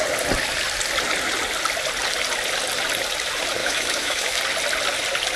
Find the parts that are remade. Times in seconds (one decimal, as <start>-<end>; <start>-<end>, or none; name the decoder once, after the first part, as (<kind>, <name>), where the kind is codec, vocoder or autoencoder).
3.6-4.4 (autoencoder, DAC-VAE)

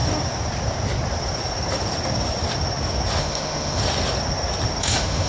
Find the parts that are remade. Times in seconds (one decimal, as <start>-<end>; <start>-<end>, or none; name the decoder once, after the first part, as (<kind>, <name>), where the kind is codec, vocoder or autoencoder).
3.2-3.8 (autoencoder, DAC-VAE); 4.8-5.3

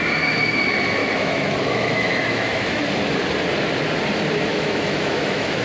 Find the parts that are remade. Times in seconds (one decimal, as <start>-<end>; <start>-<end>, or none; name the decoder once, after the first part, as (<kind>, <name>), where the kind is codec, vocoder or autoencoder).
1.0-2.8 (autoencoder, DAC-VAE); 4.5-5.6

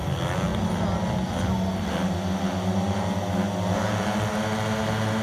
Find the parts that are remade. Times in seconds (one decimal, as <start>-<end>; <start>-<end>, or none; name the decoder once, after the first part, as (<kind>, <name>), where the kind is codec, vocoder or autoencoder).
none

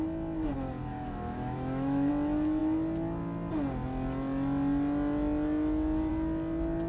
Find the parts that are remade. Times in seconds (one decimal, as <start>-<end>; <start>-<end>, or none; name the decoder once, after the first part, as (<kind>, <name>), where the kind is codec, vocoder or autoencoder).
0.9-2.1 (autoencoder, DAC-VAE)

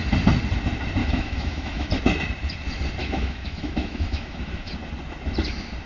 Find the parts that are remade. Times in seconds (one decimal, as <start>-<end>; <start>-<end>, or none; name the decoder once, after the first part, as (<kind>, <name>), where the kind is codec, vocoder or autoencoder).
1.0-1.9 (autoencoder, DAC-VAE); 3.0-4.7

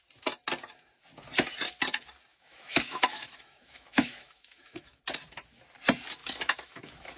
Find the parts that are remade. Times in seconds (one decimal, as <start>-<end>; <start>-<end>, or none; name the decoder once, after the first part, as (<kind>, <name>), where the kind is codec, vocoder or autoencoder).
2.3-5.0 (autoencoder, DAC-VAE); 6.2-7.2

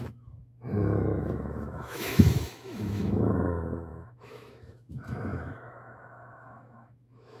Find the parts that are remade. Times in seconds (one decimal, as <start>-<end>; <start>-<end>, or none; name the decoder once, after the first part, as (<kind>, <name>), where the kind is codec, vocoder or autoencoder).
0.0-7.4 (autoencoder, DAC-VAE)